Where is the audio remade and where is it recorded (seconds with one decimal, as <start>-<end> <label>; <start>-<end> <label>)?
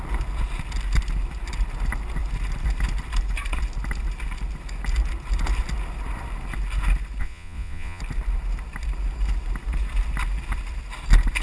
0.0-7.2 recorded; 7.2-8.0 remade; 8.0-11.4 recorded